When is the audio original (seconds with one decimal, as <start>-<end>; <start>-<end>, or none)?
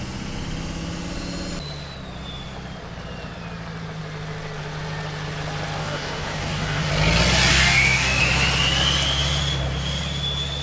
0.0-5.8; 6.9-7.5; 8.2-10.6